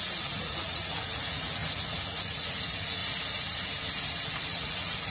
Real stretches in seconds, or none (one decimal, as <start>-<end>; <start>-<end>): 3.0-4.4